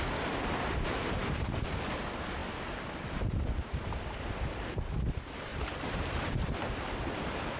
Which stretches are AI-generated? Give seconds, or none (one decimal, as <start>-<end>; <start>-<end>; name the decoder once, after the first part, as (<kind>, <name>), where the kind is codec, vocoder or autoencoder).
1.2-2.0 (vocoder, BigVGAN v2); 2.4-4.8; 5.5-7.6